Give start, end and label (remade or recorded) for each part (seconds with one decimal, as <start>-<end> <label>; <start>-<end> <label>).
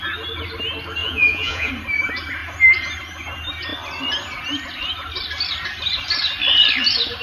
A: 0.0-1.0 recorded; 1.0-1.7 remade; 1.7-7.2 recorded